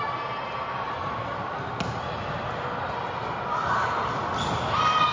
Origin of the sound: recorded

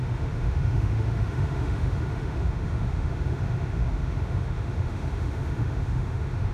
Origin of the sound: remade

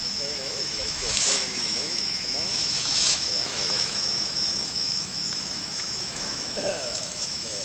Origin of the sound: remade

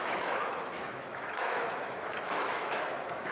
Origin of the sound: remade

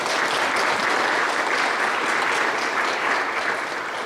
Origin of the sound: recorded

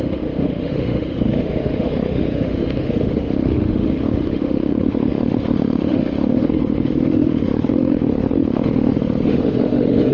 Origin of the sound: remade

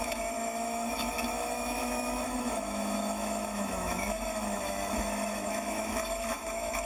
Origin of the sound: remade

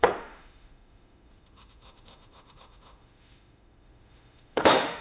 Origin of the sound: remade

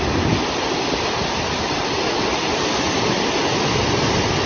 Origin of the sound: recorded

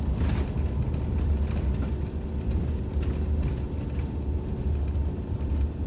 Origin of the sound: recorded